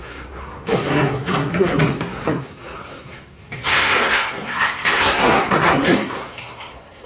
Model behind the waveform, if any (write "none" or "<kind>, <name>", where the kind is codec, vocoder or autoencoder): codec, SNAC